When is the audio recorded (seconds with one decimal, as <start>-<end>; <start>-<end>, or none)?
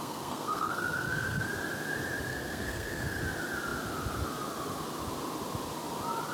1.5-2.3; 3.2-6.3